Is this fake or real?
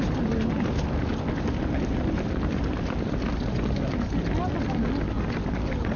real